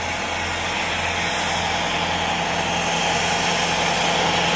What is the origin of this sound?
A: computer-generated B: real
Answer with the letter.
B